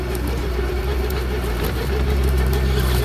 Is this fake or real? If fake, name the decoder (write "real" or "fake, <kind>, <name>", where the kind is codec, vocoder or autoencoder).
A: fake, vocoder, BigVGAN v2